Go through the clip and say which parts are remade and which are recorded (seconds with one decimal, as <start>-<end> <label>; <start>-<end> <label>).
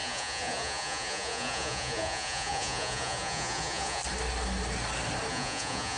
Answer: 0.0-4.0 remade; 4.0-5.3 recorded; 5.3-6.0 remade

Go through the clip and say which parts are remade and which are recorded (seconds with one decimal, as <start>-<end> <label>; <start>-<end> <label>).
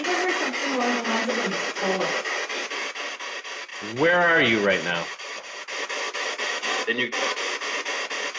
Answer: 0.0-8.4 recorded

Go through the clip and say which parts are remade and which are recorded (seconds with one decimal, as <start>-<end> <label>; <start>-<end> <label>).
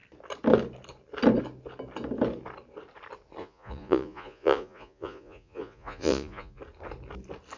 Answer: 0.0-3.4 recorded; 3.4-6.6 remade; 6.6-7.6 recorded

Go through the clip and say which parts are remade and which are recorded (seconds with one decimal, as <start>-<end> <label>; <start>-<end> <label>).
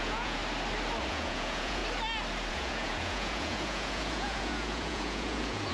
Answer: 0.0-0.4 remade; 0.4-1.1 recorded; 1.1-1.8 remade; 1.8-2.5 recorded; 2.5-5.7 remade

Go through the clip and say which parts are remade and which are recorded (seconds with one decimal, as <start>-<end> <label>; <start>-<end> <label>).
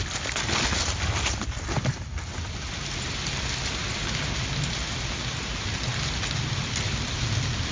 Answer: 0.0-7.7 recorded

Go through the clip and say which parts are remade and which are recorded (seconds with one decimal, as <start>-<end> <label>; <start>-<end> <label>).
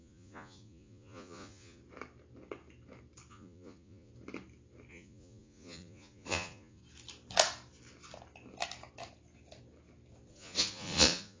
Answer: 0.0-1.8 remade; 1.8-3.3 recorded; 3.3-4.1 remade; 4.1-4.9 recorded; 4.9-6.8 remade; 6.8-10.3 recorded; 10.3-11.4 remade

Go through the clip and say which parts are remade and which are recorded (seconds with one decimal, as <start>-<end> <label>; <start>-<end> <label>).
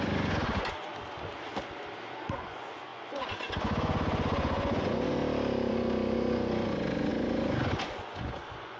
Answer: 0.0-0.9 remade; 0.9-2.1 recorded; 2.1-5.2 remade; 5.2-5.7 recorded; 5.7-8.8 remade